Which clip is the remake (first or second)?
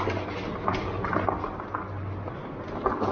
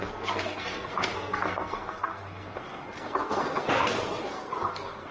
second